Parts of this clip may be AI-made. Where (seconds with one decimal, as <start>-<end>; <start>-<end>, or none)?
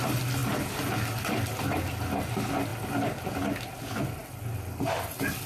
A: none